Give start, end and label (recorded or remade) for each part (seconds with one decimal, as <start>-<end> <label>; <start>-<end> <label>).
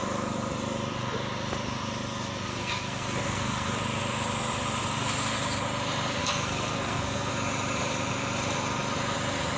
0.0-2.5 recorded; 2.5-3.7 remade; 3.7-6.2 recorded; 6.2-7.3 remade; 7.3-9.6 recorded